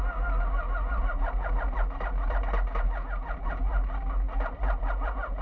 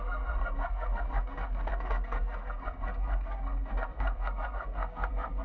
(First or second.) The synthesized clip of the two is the second